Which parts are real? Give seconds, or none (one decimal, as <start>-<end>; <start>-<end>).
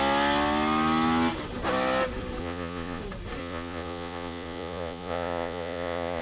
0.0-2.4; 3.0-3.4